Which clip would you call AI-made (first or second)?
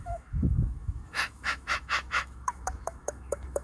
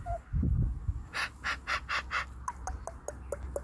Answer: first